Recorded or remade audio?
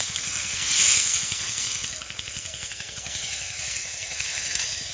remade